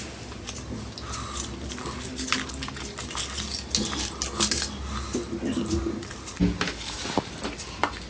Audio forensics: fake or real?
real